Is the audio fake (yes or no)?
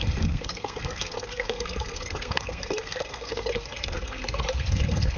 yes